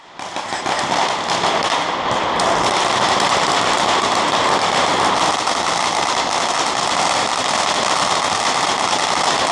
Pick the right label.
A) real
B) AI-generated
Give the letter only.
A